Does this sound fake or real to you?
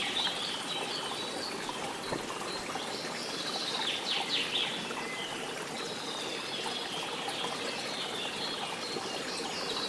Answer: real